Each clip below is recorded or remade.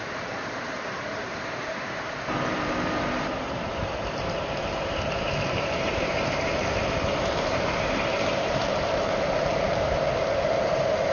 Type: remade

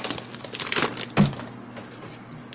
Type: recorded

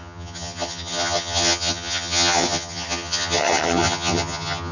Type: remade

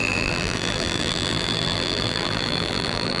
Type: remade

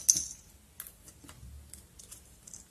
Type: recorded